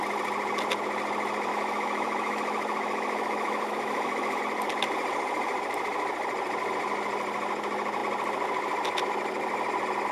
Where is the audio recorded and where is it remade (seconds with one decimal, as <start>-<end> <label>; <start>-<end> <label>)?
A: 0.0-1.5 recorded; 1.5-4.4 remade; 4.4-10.1 recorded